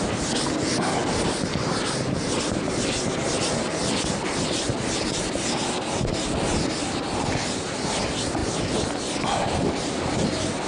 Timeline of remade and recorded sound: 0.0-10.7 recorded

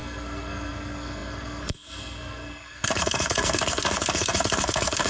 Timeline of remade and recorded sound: 0.0-5.1 remade

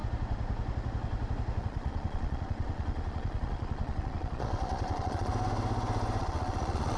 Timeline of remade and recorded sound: 0.0-1.6 recorded; 1.6-5.3 remade; 5.3-6.2 recorded; 6.2-7.0 remade

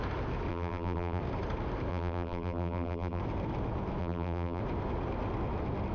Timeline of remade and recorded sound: 0.0-0.5 recorded; 0.5-1.2 remade; 1.2-1.9 recorded; 1.9-3.2 remade; 3.2-4.0 recorded; 4.0-4.6 remade; 4.6-5.9 recorded